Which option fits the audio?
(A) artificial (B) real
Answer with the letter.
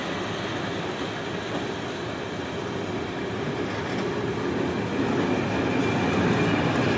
B